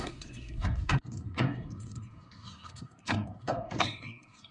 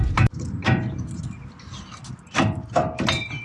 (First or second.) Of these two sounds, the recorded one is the second